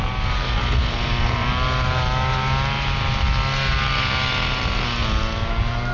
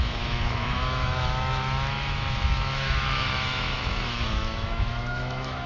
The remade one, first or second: second